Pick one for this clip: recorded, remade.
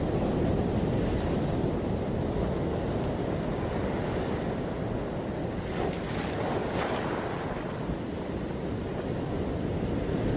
recorded